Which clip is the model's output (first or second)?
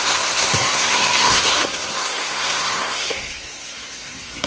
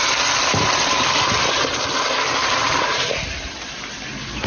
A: first